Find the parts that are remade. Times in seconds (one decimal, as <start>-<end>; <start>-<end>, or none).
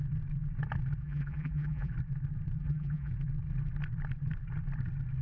1.0-1.9; 2.6-3.1